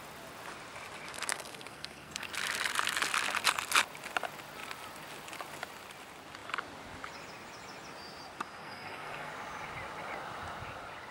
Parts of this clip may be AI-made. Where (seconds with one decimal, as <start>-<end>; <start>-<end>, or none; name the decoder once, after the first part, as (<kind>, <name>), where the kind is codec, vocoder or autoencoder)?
1.3-2.3 (codec, SNAC); 8.6-9.3